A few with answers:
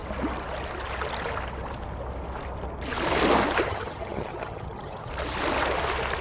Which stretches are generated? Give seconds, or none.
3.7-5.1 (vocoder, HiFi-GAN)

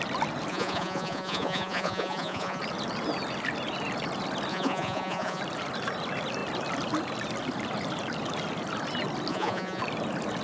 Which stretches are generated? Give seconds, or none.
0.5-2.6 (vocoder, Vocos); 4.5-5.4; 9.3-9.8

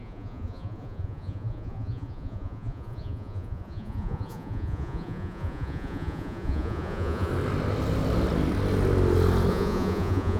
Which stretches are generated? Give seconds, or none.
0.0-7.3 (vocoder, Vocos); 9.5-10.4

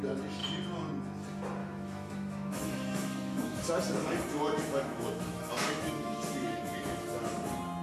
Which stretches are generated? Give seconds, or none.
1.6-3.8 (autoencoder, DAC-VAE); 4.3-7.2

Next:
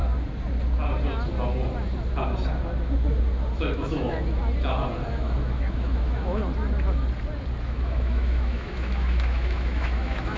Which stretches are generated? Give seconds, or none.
3.6-4.4 (autoencoder, DAC-VAE); 5.1-6.4; 7.6-10.4

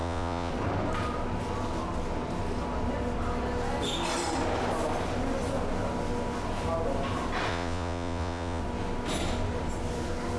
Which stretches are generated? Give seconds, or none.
0.0-0.5 (vocoder, Vocos); 7.5-8.6

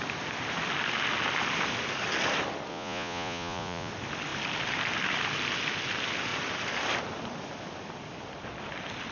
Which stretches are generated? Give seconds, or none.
2.7-3.9 (vocoder, Vocos)

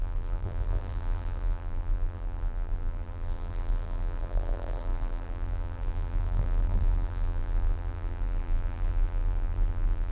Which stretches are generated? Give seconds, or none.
0.0-10.1 (vocoder, BigVGAN v2)